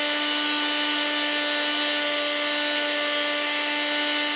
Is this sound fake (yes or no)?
no